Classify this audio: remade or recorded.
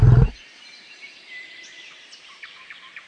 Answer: remade